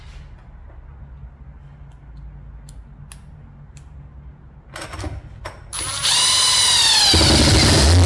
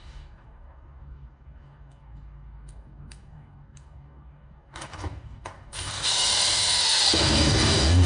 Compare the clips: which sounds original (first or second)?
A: first